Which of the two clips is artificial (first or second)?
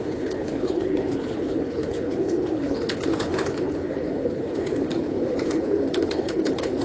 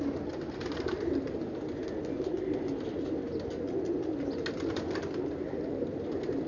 first